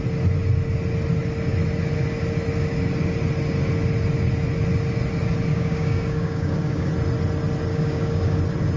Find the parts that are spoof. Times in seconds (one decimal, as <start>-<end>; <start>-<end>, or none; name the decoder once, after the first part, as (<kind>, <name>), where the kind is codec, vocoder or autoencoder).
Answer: 5.5-6.9 (codec, DAC); 7.7-8.4